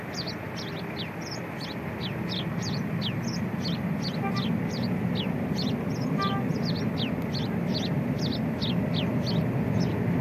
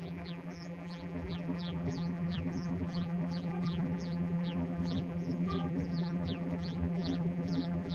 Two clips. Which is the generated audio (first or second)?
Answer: second